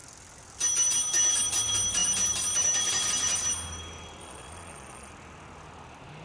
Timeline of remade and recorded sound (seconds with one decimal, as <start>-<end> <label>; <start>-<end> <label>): 0.0-4.2 recorded; 4.2-5.1 remade; 5.1-6.2 recorded

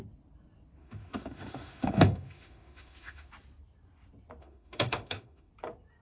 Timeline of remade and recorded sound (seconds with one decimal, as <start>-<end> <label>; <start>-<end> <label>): 0.0-0.8 recorded; 0.8-3.3 remade; 3.3-4.4 recorded; 4.4-5.5 remade; 5.5-6.0 recorded